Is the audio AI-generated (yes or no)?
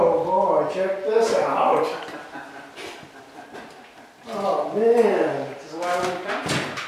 no